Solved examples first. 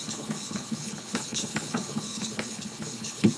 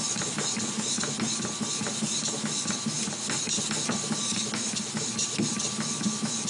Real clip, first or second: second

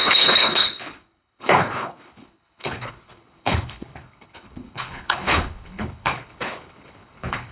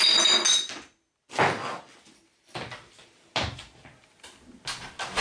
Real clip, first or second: second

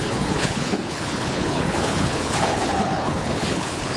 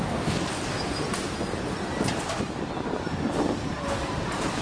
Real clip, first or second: second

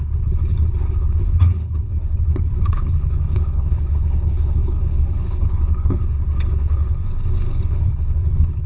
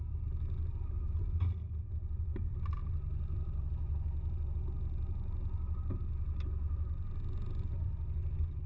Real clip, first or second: second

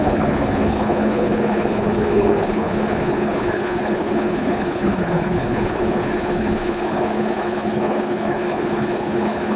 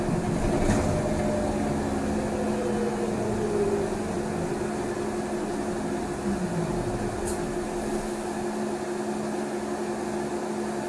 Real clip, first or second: second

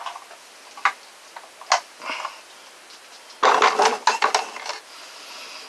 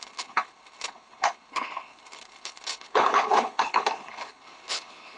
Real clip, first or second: first